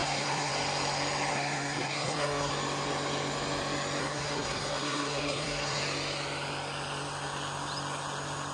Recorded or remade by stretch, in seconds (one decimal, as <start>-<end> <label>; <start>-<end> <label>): 0.0-0.5 remade; 0.5-1.3 recorded; 1.3-2.5 remade; 2.5-4.0 recorded; 4.0-5.8 remade; 5.8-8.5 recorded